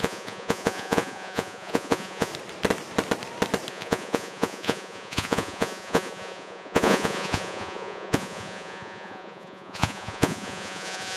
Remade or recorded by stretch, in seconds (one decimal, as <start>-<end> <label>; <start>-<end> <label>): 0.0-2.3 remade; 2.3-3.7 recorded; 3.7-11.2 remade